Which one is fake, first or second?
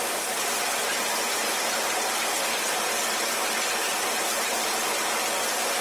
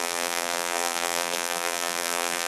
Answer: second